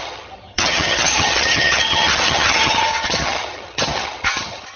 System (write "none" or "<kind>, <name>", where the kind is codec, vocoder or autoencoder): vocoder, HiFi-GAN